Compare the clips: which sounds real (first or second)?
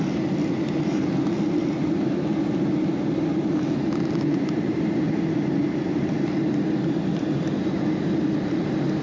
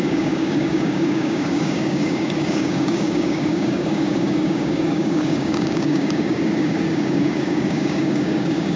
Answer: first